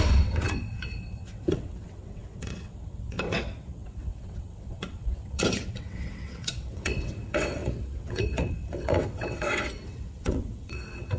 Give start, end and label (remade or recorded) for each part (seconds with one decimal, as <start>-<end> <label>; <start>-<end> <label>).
0.0-11.2 remade